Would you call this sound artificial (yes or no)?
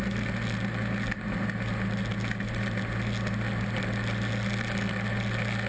no